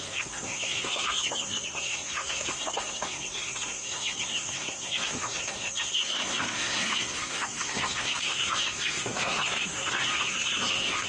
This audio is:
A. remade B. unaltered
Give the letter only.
A